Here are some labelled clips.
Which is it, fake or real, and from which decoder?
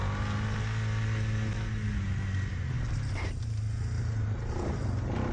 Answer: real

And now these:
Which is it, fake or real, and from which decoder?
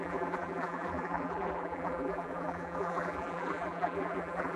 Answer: fake, vocoder, BigVGAN v2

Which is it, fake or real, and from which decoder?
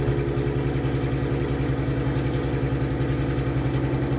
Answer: real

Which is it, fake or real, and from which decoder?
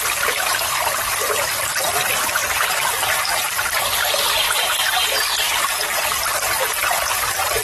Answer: real